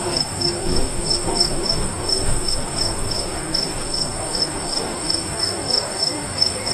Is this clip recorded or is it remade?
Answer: remade